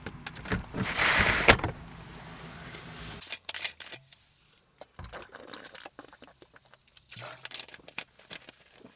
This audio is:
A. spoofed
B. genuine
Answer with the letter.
B